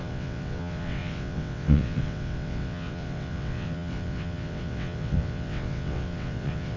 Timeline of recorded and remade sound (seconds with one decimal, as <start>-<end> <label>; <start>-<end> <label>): 0.0-6.8 remade